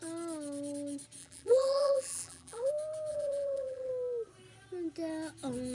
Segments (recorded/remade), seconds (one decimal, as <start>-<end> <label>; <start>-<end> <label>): 0.0-1.2 recorded; 1.2-2.7 remade; 2.7-3.1 recorded; 3.1-3.9 remade; 3.9-5.7 recorded

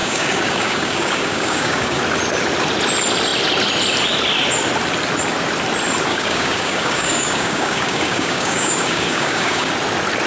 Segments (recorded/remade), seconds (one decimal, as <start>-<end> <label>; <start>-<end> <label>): 0.0-2.0 remade; 2.0-6.1 recorded; 6.1-9.7 remade; 9.7-10.3 recorded

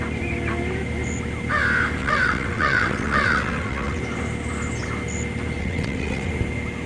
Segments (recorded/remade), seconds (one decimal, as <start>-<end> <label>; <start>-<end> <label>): 0.0-2.0 recorded; 2.0-4.0 remade; 4.0-5.6 recorded; 5.6-6.3 remade; 6.3-6.9 recorded

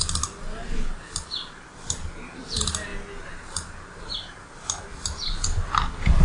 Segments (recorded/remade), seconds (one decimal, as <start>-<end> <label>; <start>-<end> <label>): 0.0-1.6 recorded; 1.6-2.9 remade; 2.9-4.0 recorded; 4.0-6.2 remade

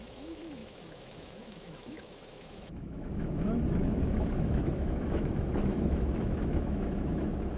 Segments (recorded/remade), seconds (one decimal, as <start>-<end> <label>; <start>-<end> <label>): 0.0-7.6 remade

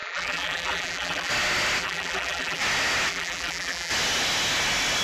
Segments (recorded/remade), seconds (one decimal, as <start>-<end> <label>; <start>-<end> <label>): 0.0-1.3 remade; 1.3-1.8 recorded; 1.8-2.6 remade; 2.6-3.1 recorded; 3.1-3.9 remade; 3.9-5.0 recorded

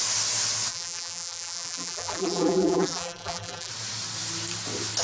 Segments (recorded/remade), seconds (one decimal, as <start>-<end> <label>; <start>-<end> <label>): 0.0-0.7 recorded; 0.7-3.7 remade; 3.7-5.0 recorded

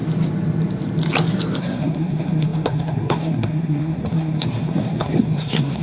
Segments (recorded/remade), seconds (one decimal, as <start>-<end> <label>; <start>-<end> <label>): 0.0-1.6 recorded; 1.6-5.8 remade